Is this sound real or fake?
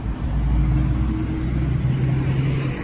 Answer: real